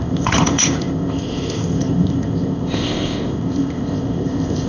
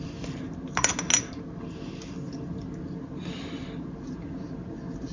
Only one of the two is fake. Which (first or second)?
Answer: first